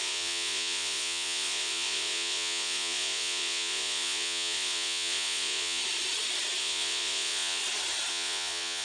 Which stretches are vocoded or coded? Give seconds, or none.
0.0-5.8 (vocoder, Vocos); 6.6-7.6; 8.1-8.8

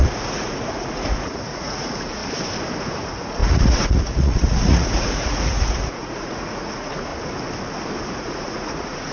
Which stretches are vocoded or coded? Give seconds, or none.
0.0-2.2 (vocoder, Vocos); 2.8-7.1; 8.0-9.1

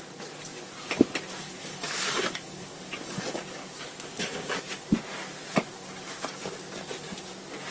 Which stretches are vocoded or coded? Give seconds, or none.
1.4-4.5 (codec, DAC)

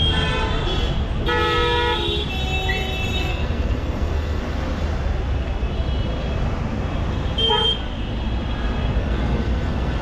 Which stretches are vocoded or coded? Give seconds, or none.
3.2-4.4 (codec, SNAC); 9.0-10.0

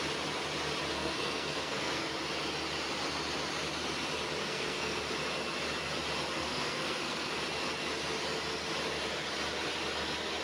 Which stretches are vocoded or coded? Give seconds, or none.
0.9-2.1 (codec, SNAC); 4.4-5.0; 6.4-7.3

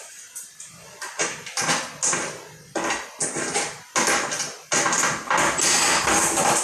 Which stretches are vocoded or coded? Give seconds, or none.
3.2-3.8 (vocoder, BigVGAN v2)

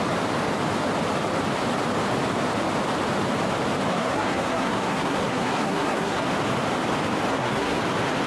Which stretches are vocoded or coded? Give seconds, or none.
3.9-6.3 (codec, SNAC); 7.3-7.8

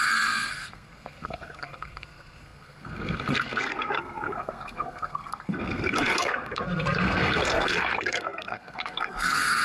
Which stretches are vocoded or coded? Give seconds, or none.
0.0-9.6 (codec, SNAC)